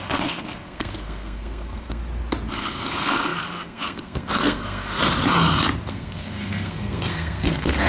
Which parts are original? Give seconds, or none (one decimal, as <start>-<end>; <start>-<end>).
2.0-2.5; 4.9-5.9